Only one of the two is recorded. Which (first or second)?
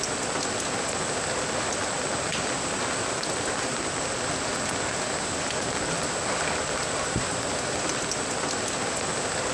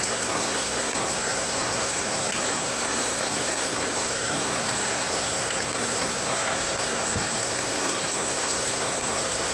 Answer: first